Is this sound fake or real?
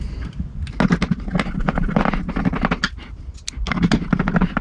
real